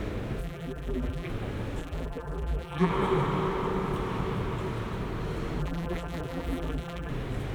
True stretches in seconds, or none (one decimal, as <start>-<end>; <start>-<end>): 0.0-0.4; 1.3-1.8; 2.9-5.6; 7.1-7.5